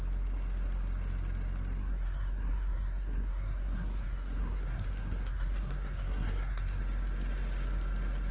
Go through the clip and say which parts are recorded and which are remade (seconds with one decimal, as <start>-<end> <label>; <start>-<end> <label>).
0.0-1.8 recorded; 1.8-6.8 remade; 6.8-8.3 recorded

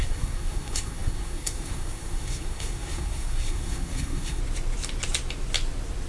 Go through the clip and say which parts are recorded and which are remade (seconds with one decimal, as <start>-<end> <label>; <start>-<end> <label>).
0.0-4.4 remade; 4.4-6.1 recorded